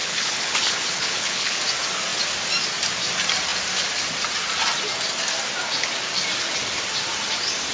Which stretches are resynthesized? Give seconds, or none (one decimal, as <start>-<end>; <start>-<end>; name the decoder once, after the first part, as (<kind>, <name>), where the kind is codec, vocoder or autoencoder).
0.0-1.6 (codec, HILCodec)